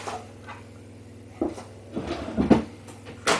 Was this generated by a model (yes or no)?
no